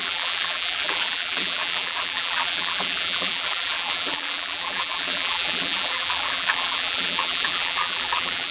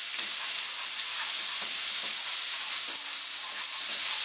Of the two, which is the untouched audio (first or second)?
second